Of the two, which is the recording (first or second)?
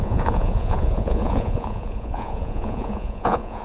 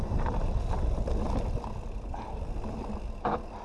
second